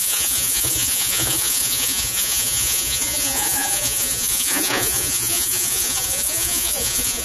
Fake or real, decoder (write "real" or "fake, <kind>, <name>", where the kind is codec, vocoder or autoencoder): fake, vocoder, Vocos